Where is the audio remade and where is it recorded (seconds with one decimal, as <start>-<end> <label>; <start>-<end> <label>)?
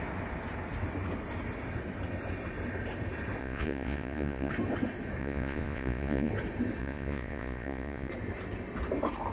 0.0-3.4 recorded; 3.4-4.5 remade; 4.5-5.2 recorded; 5.2-6.3 remade; 6.3-6.8 recorded; 6.8-8.1 remade; 8.1-9.3 recorded